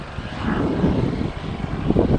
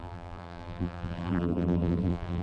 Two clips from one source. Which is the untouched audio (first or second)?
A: first